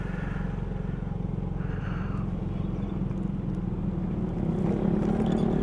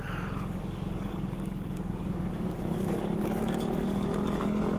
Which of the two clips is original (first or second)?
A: first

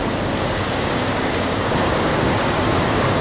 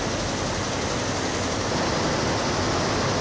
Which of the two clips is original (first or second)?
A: second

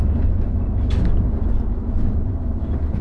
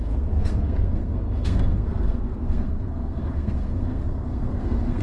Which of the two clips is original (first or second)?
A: first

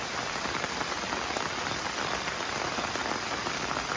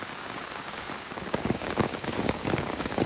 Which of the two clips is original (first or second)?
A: first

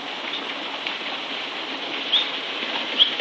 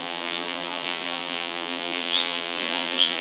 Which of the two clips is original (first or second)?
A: first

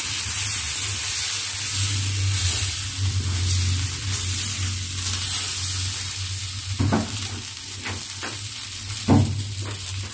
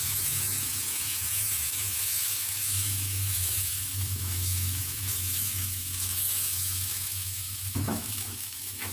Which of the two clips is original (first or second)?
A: first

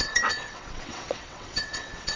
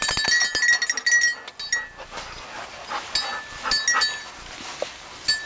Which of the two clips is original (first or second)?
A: second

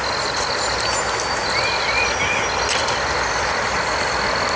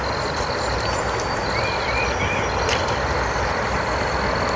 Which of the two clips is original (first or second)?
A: first